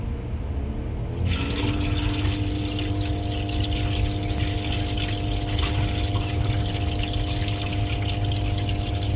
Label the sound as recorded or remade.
recorded